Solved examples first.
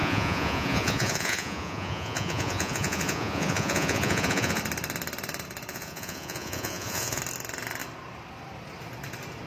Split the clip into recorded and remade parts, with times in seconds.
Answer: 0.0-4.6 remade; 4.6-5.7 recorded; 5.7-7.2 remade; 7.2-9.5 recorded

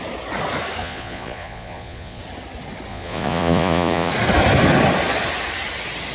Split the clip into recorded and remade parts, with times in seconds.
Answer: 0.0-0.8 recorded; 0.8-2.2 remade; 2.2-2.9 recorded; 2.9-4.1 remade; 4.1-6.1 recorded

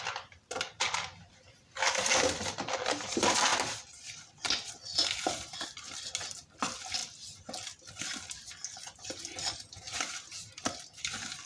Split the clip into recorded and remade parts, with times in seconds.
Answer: 0.0-11.5 recorded

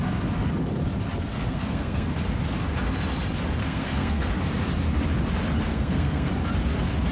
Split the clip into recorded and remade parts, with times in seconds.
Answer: 0.0-1.3 recorded; 1.3-2.1 remade; 2.1-3.6 recorded; 3.6-4.3 remade; 4.3-5.7 recorded; 5.7-6.3 remade; 6.3-7.1 recorded